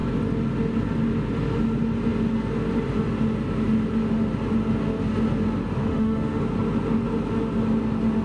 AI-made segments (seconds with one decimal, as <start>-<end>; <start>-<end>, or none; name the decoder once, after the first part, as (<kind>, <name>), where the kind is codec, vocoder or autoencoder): 5.8-6.4 (autoencoder, DAC-VAE)